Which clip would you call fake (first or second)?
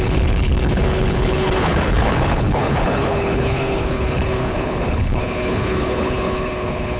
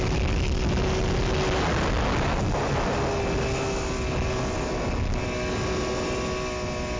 first